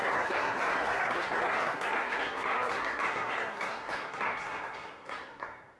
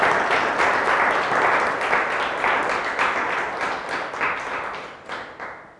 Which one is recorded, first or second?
second